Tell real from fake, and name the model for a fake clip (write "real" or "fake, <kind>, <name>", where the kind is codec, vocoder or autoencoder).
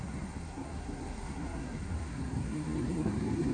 fake, codec, SNAC